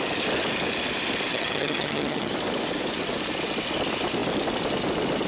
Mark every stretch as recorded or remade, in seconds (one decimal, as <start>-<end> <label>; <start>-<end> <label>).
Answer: 0.0-1.3 recorded; 1.3-2.3 remade; 2.3-5.3 recorded